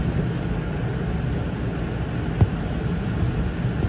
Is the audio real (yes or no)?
yes